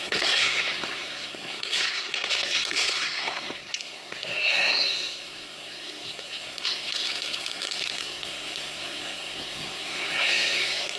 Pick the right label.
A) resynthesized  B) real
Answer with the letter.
A